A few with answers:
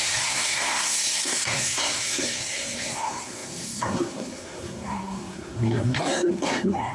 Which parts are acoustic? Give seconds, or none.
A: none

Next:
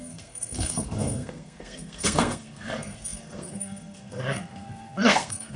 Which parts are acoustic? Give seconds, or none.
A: none